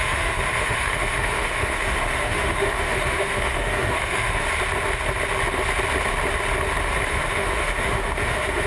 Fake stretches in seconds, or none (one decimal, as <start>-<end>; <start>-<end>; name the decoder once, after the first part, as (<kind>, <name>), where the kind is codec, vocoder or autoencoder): 0.0-4.5 (autoencoder, DAC-VAE); 7.1-8.7